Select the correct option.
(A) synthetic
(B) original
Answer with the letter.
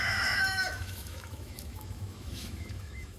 A